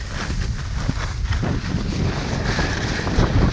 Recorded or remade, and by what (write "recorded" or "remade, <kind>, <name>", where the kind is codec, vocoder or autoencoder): recorded